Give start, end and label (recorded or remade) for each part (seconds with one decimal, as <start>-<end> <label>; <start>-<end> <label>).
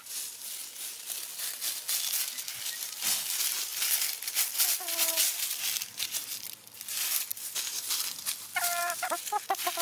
0.0-9.8 recorded